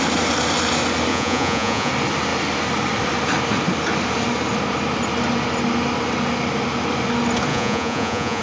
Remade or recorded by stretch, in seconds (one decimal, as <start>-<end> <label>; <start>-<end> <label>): 0.0-1.1 recorded; 1.1-1.9 remade; 1.9-7.5 recorded; 7.5-8.4 remade